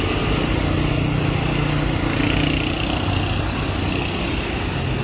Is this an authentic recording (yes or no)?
yes